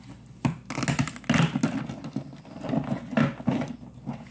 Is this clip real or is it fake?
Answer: real